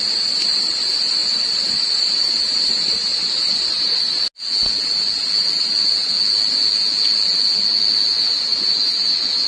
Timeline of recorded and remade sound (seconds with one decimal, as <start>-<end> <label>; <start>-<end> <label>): 0.0-1.2 recorded; 1.2-1.9 remade; 1.9-9.5 recorded